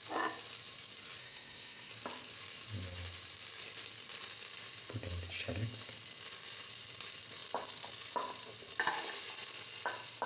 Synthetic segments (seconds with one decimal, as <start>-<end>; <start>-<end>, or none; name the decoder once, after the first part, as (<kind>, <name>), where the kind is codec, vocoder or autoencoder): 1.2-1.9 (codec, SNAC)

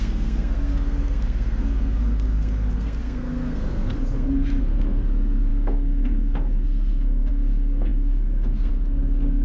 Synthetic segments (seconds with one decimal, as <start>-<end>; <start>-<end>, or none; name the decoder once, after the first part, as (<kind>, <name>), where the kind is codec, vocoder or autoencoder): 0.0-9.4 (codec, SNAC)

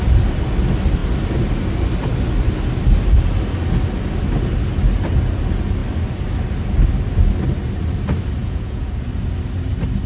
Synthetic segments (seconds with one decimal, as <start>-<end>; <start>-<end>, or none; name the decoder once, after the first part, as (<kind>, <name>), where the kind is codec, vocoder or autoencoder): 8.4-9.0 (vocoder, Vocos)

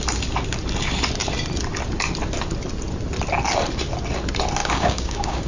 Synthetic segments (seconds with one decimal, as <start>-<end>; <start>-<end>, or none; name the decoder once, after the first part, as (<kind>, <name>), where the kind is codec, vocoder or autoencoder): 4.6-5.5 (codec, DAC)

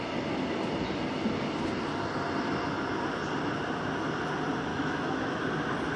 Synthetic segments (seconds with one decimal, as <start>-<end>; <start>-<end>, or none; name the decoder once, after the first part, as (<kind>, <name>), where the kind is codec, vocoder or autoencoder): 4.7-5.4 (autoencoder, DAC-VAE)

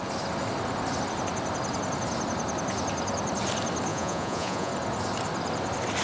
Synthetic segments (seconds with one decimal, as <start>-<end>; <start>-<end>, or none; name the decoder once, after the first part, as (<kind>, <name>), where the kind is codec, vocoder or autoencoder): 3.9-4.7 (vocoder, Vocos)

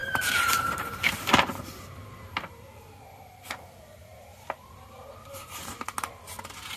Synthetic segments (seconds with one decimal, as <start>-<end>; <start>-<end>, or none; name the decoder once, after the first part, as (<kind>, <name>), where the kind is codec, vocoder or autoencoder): 0.0-2.9 (vocoder, BigVGAN v2); 4.1-5.7

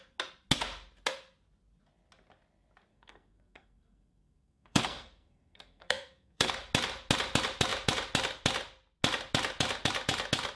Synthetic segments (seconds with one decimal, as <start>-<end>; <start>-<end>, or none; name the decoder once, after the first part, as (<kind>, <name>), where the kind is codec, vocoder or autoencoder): 2.9-6.5 (codec, SNAC)